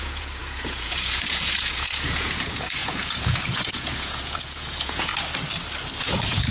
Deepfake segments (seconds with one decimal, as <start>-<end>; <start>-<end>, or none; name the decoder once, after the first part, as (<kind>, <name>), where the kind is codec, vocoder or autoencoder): 0.0-5.1 (vocoder, Vocos); 6.0-6.5

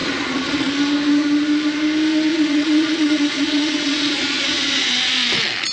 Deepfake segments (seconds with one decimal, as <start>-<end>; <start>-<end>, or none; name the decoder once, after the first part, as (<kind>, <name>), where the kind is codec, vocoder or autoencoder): 0.0-0.7 (vocoder, Vocos); 2.3-4.9

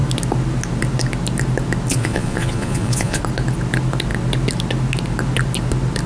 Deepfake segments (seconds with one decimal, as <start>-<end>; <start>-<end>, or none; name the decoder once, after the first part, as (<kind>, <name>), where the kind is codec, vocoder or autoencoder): 1.9-3.2 (vocoder, Vocos)

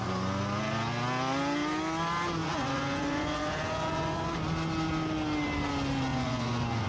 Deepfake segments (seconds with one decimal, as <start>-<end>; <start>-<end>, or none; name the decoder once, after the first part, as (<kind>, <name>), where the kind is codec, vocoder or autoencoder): 2.4-4.3 (vocoder, Vocos); 6.1-6.9

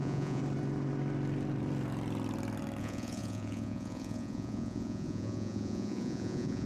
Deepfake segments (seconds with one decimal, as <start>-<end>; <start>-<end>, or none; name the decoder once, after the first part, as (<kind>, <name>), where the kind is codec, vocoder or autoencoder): 0.0-0.4 (vocoder, Vocos); 2.8-6.7

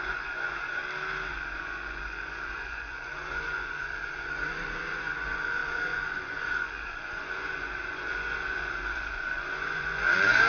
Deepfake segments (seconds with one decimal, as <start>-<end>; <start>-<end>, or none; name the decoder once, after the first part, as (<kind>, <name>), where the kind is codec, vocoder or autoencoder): 0.0-0.8 (vocoder, Vocos); 1.3-10.5

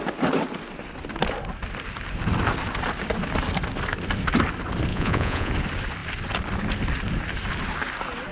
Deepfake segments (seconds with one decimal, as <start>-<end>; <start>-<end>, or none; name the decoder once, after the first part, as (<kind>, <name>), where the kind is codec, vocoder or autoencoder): 4.9-5.5 (vocoder, Vocos)

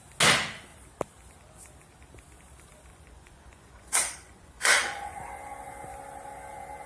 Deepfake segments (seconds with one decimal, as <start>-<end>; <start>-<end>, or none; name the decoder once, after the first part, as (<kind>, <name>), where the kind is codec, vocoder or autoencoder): 2.9-5.2 (vocoder, Vocos)